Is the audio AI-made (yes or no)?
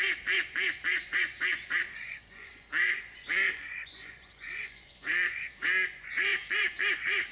yes